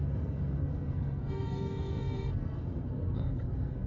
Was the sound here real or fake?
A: fake